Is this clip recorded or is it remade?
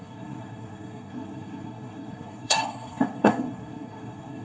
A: remade